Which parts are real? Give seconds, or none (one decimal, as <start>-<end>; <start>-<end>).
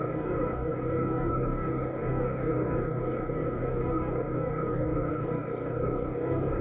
none